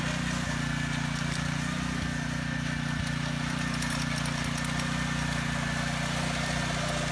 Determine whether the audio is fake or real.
real